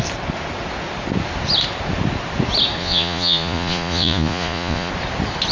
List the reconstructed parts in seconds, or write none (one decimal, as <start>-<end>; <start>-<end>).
2.8-4.9